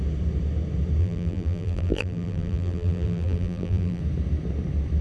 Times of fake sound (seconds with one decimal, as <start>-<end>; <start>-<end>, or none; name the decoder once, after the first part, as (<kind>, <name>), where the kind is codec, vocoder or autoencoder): 1.0-4.0 (vocoder, BigVGAN v2)